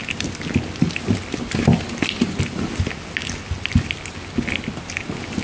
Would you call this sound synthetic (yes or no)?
no